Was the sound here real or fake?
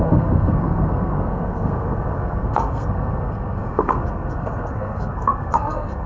fake